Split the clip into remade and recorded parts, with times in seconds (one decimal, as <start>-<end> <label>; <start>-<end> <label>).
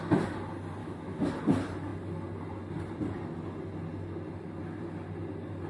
0.0-0.8 recorded; 0.8-1.3 remade; 1.3-5.7 recorded